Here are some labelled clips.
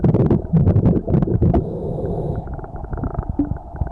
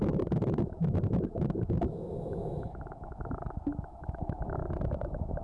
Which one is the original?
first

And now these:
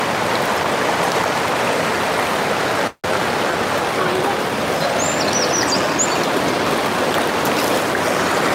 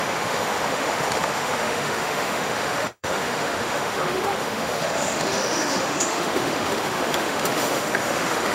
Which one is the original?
first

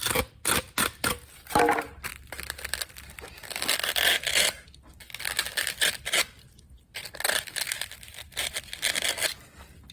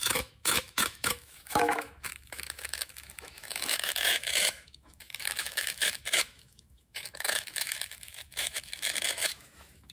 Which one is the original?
first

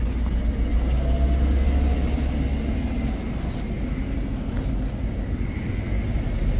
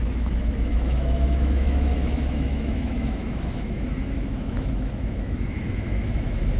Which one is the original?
first